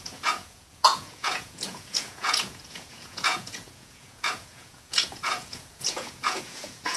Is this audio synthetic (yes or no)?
yes